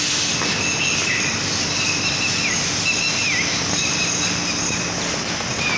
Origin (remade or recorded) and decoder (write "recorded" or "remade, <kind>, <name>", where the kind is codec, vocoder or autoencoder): recorded